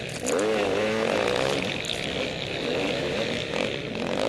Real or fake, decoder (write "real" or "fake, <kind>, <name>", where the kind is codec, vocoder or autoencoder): real